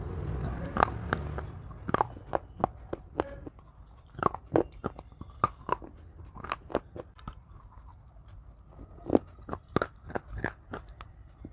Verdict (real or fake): real